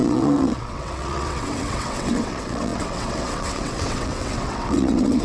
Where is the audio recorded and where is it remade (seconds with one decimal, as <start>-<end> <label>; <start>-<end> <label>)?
0.0-5.2 remade